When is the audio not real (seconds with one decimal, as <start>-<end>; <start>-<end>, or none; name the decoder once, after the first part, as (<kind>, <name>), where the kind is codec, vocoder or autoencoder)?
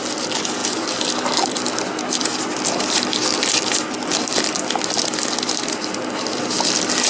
none